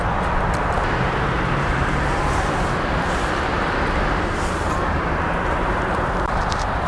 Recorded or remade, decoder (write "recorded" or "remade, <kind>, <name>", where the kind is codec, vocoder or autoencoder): remade, vocoder, BigVGAN v2